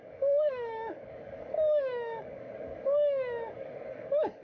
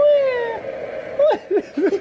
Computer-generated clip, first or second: first